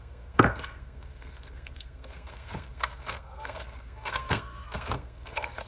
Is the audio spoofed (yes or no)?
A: yes